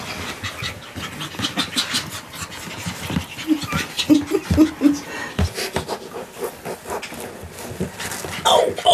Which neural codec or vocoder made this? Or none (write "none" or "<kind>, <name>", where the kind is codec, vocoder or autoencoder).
none